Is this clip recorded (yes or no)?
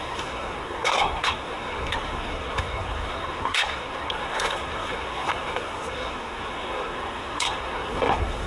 no